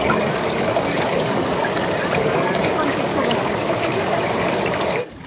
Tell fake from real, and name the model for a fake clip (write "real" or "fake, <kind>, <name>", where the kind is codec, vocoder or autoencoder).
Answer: fake, codec, DAC